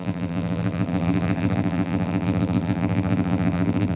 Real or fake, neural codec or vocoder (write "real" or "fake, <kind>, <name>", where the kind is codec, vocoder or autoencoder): fake, vocoder, BigVGAN v2